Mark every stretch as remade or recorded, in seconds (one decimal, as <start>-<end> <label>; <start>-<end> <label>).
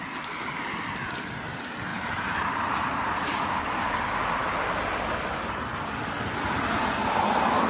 0.0-1.9 recorded; 1.9-3.6 remade; 3.6-7.7 recorded